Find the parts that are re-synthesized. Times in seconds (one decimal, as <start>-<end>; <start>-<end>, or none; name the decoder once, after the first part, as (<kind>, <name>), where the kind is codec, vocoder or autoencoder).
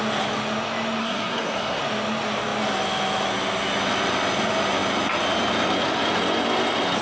1.0-1.8 (codec, SNAC)